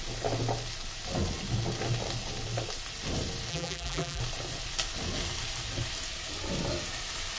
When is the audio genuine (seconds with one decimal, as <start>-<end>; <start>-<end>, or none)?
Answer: 0.0-3.5; 4.2-7.4

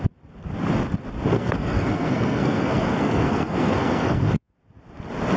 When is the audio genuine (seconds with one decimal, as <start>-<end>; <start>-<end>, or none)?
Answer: 0.0-1.3; 4.5-5.4